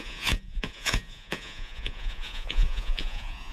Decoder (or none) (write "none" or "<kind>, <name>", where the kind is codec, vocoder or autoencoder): vocoder, Vocos